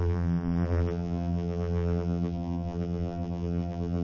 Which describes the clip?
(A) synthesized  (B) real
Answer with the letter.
A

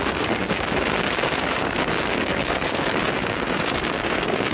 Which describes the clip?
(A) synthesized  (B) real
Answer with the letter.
A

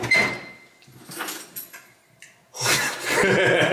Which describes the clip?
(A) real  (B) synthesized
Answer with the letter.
A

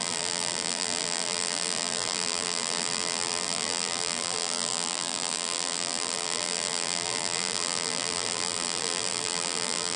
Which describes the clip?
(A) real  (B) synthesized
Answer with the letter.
B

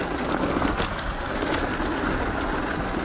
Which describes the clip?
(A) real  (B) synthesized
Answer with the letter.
A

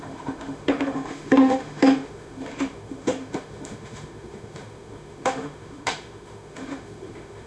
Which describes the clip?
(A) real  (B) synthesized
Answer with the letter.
B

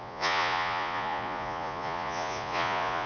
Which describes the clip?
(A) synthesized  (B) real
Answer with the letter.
A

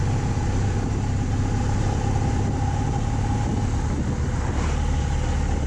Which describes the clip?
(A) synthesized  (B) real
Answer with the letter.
B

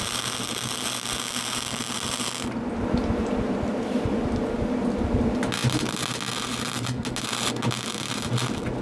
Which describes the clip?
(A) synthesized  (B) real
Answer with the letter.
B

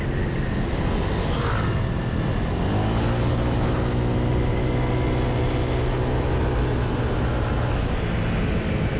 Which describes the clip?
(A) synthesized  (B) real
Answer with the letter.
B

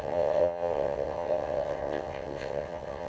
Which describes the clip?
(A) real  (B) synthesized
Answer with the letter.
B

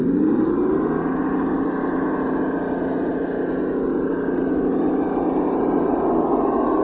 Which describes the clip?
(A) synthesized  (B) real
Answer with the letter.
B